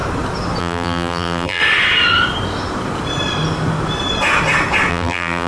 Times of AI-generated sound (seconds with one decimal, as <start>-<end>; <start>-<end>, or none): 0.6-1.6; 4.9-5.5